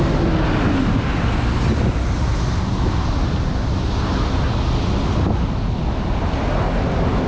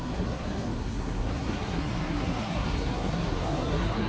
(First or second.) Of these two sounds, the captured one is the first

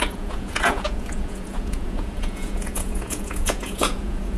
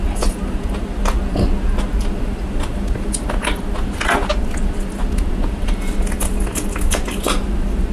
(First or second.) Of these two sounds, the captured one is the second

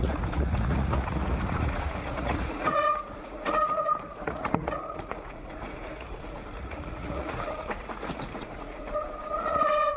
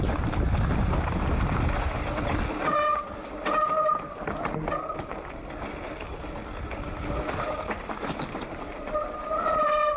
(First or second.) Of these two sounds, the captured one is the second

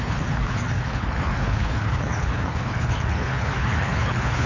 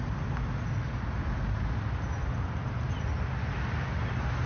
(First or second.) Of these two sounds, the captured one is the second